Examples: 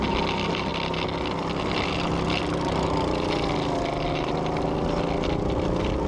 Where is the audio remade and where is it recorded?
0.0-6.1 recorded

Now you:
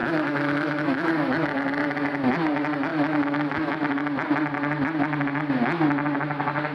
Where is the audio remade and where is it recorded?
0.0-1.1 remade; 1.1-2.9 recorded; 2.9-3.9 remade; 3.9-6.7 recorded

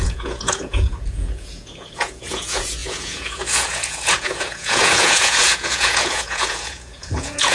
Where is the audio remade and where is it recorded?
0.0-7.5 remade

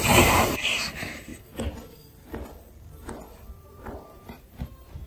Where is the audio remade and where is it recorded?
0.0-1.3 remade; 1.3-3.6 recorded; 3.6-5.1 remade

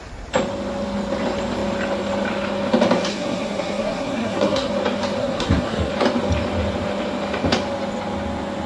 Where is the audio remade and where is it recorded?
0.0-3.1 recorded; 3.1-4.7 remade; 4.7-5.2 recorded; 5.2-5.9 remade; 5.9-8.7 recorded

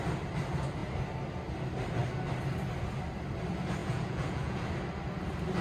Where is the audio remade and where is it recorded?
0.0-3.8 recorded; 3.8-4.7 remade; 4.7-5.6 recorded

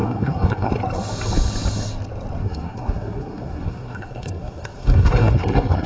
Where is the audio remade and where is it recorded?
0.0-0.7 remade; 0.7-2.4 recorded; 2.4-5.9 remade